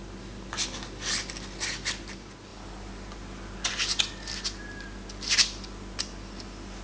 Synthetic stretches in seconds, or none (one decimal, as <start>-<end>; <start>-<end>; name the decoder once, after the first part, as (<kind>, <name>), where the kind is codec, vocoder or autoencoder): none